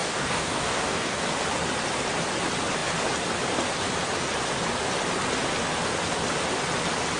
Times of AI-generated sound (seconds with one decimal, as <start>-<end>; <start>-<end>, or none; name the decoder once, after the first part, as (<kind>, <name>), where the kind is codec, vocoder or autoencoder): 0.0-1.2 (codec, DAC)